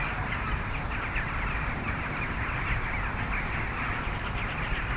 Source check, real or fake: real